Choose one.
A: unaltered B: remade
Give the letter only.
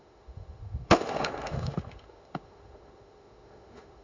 B